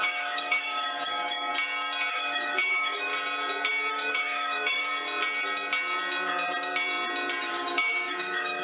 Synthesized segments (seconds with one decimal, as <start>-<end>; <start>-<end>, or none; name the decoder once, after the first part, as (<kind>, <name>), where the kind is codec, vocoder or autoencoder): 0.0-1.5 (autoencoder, DAC-VAE); 2.1-3.1; 3.9-4.9; 7.4-8.6